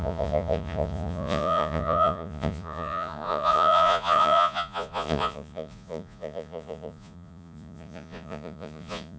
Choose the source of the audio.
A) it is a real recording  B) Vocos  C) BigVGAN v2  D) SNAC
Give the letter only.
B